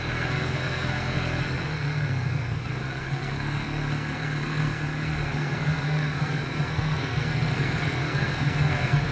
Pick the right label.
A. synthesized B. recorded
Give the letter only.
A